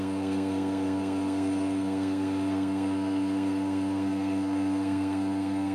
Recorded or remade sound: remade